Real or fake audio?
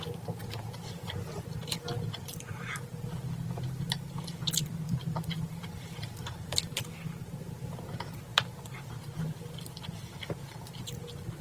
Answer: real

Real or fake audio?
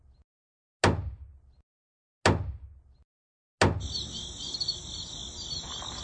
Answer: real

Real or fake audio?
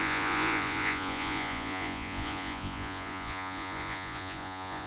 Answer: fake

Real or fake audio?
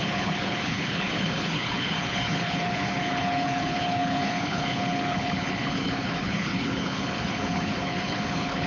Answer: fake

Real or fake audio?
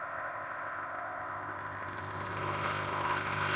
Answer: fake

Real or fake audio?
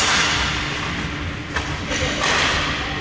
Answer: real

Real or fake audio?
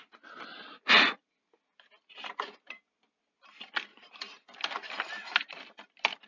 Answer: real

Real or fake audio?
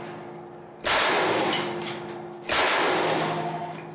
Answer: real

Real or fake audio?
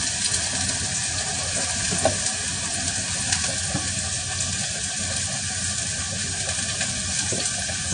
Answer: real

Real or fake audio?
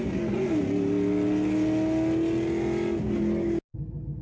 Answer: real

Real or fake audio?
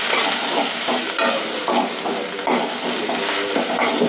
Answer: real